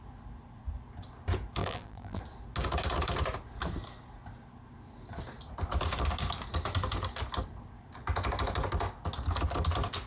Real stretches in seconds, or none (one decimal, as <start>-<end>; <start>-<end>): 0.0-1.6; 2.2-10.1